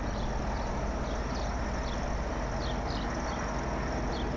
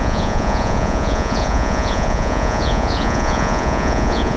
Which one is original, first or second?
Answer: first